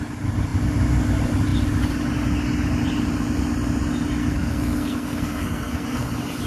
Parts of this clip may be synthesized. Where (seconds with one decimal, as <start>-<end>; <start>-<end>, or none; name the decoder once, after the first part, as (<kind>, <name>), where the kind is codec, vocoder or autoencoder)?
4.2-6.1 (codec, SNAC)